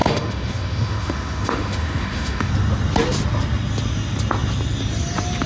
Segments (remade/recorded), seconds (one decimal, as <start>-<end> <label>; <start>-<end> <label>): 0.0-2.5 remade; 2.5-5.5 recorded

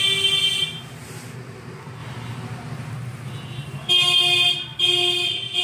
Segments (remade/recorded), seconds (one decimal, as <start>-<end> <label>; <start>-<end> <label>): 0.0-5.6 recorded

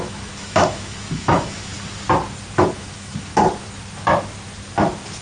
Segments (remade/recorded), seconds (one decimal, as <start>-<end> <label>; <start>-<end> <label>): 0.0-1.7 remade; 1.7-2.7 recorded; 2.7-3.3 remade; 3.3-5.2 recorded

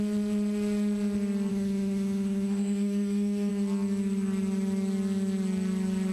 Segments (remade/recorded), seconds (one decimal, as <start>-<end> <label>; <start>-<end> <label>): 0.0-1.5 recorded; 1.5-3.5 remade; 3.5-6.1 recorded